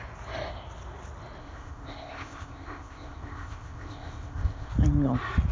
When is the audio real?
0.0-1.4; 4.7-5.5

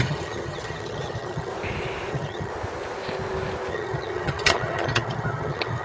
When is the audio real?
1.5-2.1; 2.5-3.7

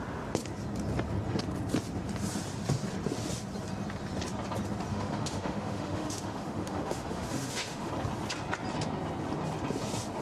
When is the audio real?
0.0-4.9; 7.9-10.2

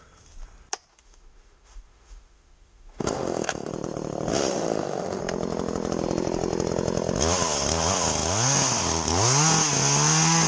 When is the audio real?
0.0-0.9; 3.7-4.3; 5.2-10.5